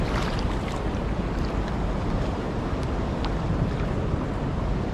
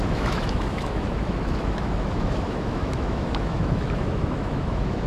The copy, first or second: second